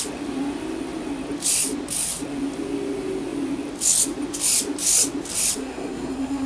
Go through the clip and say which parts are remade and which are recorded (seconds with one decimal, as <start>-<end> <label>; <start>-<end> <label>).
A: 0.0-5.6 recorded; 5.6-6.5 remade